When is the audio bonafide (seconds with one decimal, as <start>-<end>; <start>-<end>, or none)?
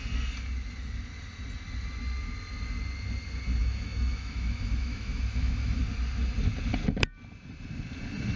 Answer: 0.0-3.6; 5.8-8.4